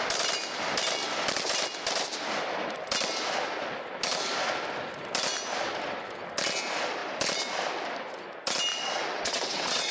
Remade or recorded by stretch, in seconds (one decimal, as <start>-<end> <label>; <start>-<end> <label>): 0.0-8.7 recorded; 8.7-9.9 remade